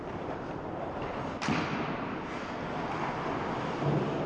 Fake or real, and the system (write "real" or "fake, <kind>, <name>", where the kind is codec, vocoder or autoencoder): real